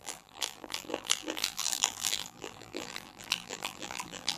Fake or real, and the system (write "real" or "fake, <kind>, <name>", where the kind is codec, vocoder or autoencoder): fake, vocoder, BigVGAN v2